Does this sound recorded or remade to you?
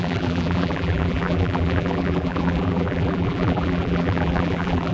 remade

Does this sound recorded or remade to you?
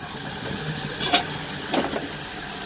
remade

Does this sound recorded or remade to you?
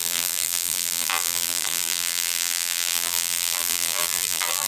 remade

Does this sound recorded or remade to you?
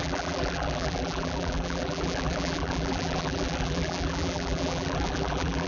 remade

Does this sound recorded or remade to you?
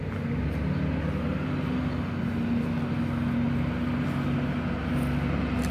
remade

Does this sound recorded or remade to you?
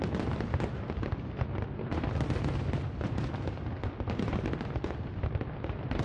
recorded